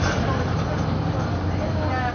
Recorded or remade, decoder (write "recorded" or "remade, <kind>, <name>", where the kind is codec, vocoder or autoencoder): recorded